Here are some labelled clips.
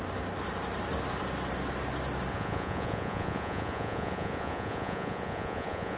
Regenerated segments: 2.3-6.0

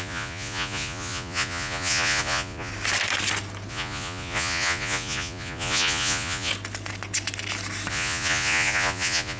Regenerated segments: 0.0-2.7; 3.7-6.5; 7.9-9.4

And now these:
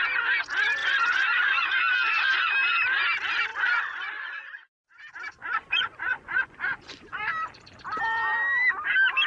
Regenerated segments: 0.8-1.8; 3.5-5.0; 5.4-7.3